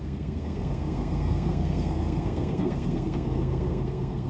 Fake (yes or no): yes